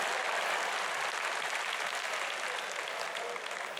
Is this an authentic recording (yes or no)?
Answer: yes